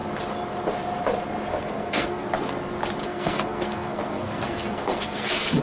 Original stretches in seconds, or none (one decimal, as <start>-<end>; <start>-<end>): 0.0-1.5; 2.3-3.0